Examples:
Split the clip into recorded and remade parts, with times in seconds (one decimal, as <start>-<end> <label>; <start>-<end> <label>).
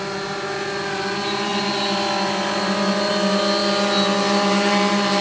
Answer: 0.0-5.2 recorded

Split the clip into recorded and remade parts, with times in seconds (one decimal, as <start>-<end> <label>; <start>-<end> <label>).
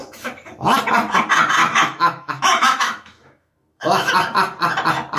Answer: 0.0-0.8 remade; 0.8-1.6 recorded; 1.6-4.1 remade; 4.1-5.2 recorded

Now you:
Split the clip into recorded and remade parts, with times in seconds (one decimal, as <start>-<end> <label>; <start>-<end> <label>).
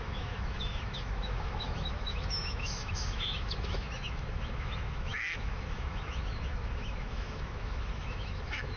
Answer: 0.0-8.8 remade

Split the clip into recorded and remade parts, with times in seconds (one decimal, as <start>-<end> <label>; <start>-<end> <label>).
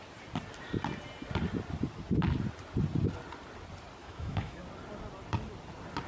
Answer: 0.0-4.0 recorded; 4.0-4.6 remade; 4.6-6.1 recorded